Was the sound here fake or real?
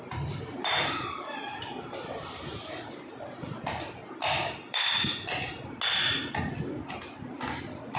real